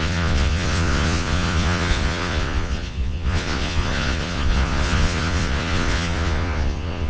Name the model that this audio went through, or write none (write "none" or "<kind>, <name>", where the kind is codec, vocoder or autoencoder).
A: vocoder, Vocos